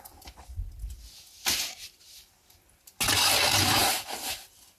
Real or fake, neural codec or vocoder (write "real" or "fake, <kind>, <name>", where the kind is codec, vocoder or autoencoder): real